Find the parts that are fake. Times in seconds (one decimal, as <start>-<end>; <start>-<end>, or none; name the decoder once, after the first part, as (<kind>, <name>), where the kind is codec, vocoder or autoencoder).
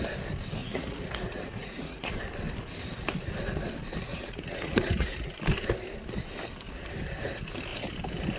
0.6-2.1 (vocoder, Vocos); 4.1-5.4